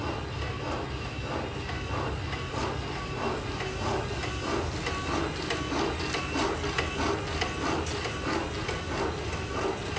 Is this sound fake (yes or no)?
no